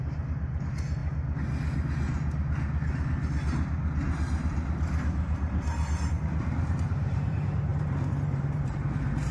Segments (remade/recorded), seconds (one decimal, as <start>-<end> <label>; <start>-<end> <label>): 0.0-1.0 remade; 1.0-6.1 recorded; 6.1-9.3 remade